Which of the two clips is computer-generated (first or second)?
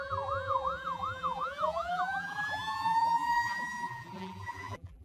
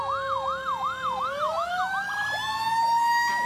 first